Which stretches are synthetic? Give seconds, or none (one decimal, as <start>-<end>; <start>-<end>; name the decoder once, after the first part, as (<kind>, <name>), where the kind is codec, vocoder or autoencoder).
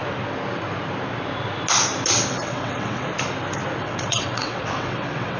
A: 2.3-3.1 (vocoder, WaveNeXt); 3.8-5.4